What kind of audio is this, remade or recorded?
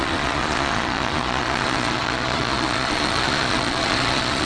remade